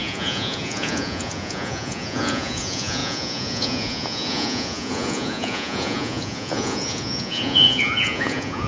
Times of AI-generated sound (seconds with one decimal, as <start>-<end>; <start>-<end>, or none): 0.0-8.7